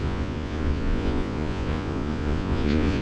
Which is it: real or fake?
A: fake